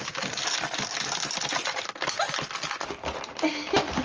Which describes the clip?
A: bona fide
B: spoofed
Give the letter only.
A